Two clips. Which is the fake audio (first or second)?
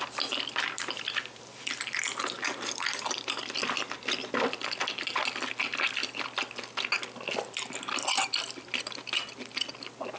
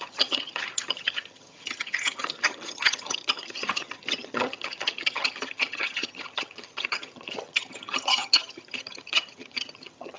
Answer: second